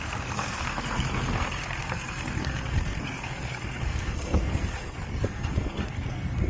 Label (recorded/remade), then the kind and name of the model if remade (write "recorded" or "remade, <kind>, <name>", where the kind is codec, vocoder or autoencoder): remade, codec, SNAC